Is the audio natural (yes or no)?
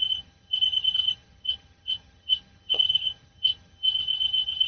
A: no